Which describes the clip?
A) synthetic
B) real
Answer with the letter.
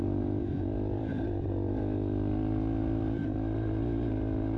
A